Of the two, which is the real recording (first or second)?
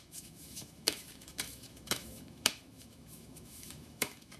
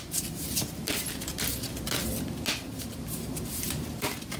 second